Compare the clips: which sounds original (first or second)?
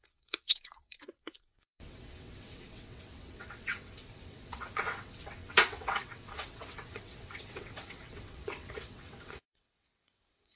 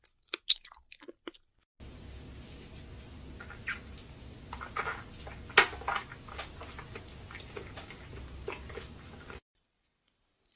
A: second